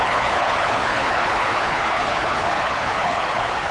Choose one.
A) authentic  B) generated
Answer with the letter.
B